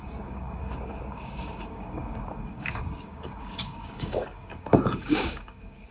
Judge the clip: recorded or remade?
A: remade